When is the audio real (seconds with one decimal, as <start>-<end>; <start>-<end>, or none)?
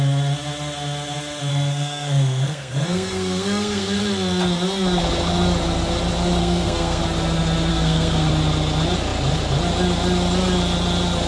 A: 0.0-1.5; 4.0-6.4; 7.0-7.7; 8.3-11.3